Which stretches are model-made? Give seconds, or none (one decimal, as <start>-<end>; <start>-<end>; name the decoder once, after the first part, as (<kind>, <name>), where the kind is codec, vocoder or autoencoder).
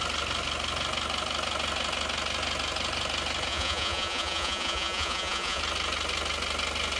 3.5-5.6 (vocoder, Vocos)